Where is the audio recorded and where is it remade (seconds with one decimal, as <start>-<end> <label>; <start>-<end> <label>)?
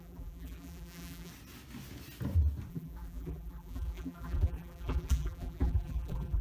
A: 0.0-1.3 remade; 1.3-2.7 recorded; 2.7-6.4 remade